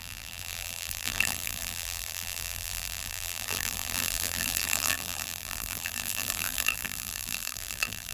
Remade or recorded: remade